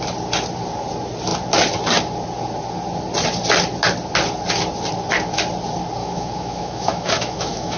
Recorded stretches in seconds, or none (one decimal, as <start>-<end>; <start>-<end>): 0.0-6.0